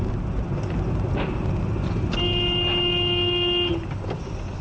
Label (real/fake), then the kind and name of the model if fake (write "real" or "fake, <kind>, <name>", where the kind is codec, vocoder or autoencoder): real